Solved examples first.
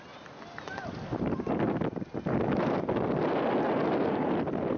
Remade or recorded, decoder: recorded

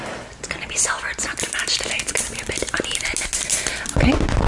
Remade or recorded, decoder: recorded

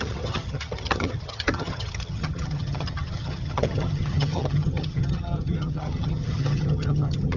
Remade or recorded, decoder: remade, vocoder, HiFi-GAN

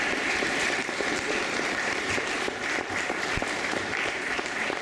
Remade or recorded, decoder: remade, vocoder, BigVGAN v2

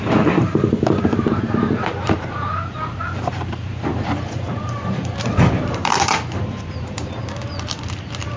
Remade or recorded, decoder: remade, vocoder, BigVGAN v2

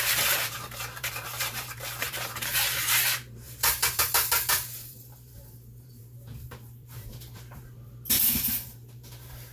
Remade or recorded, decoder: remade, vocoder, BigVGAN v2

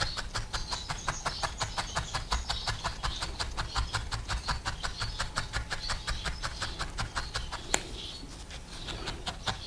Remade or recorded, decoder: recorded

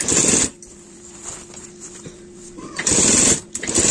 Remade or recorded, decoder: recorded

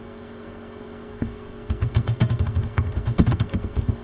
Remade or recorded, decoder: remade, codec, SNAC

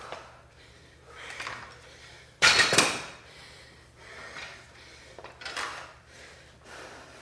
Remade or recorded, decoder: remade, vocoder, BigVGAN v2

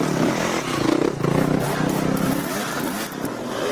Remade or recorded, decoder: recorded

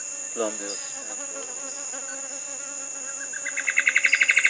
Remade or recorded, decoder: recorded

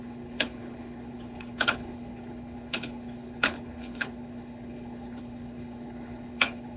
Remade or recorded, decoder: remade, codec, HILCodec